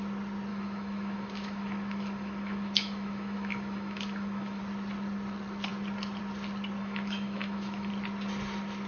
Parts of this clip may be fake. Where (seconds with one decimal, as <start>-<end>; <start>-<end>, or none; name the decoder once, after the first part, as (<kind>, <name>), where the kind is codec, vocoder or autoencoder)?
0.5-4.6 (autoencoder, DAC-VAE); 6.8-7.9